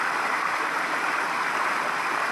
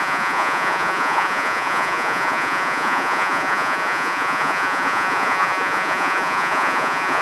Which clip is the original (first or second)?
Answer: first